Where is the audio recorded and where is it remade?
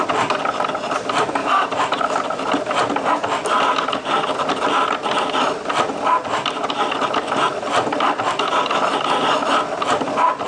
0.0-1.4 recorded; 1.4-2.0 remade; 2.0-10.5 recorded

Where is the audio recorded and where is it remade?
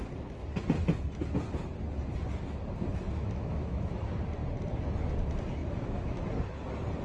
0.0-2.9 recorded; 2.9-4.0 remade; 4.0-5.6 recorded; 5.6-6.2 remade; 6.2-7.0 recorded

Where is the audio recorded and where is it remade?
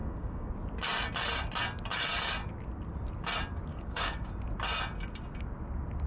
0.0-0.5 remade; 0.5-3.7 recorded; 3.7-4.3 remade; 4.3-6.1 recorded